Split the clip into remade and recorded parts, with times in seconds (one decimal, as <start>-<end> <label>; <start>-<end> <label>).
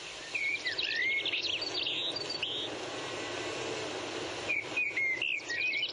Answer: 0.0-5.9 recorded